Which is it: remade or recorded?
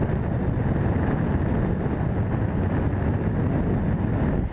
recorded